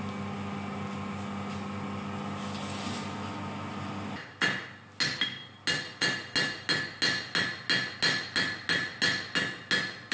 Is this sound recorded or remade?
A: recorded